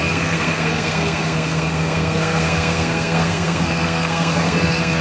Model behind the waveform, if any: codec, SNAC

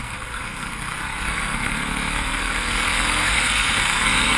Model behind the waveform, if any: codec, SNAC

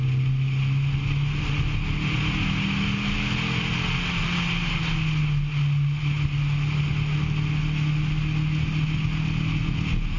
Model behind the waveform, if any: none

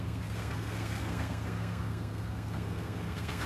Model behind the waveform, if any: codec, SNAC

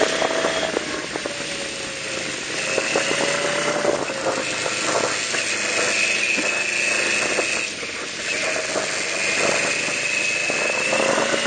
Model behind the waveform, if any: none